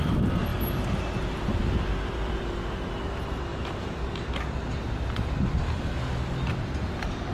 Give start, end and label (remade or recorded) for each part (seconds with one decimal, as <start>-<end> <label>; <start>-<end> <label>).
0.0-7.3 recorded